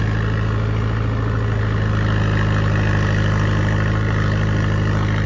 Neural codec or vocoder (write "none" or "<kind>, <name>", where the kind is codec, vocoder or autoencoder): none